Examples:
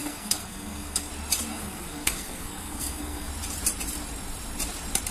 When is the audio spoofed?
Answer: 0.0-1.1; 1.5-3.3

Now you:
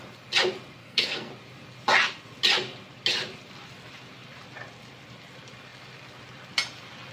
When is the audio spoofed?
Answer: 0.8-1.3

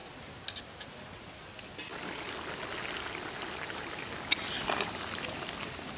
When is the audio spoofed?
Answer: none

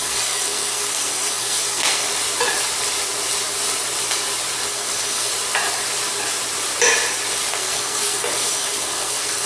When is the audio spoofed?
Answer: 0.0-2.1; 4.7-5.3; 7.5-9.5